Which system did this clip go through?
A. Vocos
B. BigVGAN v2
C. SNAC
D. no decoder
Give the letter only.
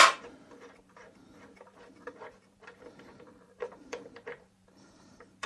B